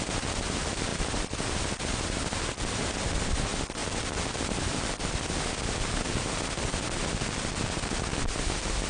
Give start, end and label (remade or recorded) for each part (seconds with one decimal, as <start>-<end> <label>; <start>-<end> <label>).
0.0-8.9 recorded